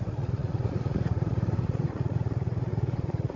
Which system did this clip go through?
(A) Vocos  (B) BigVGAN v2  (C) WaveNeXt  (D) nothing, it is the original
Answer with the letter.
A